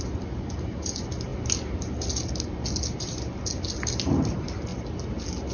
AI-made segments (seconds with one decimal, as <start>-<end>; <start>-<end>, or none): none